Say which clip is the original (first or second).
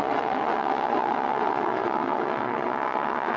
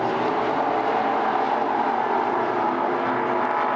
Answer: second